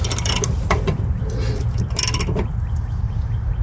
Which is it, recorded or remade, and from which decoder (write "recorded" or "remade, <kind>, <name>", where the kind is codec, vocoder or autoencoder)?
recorded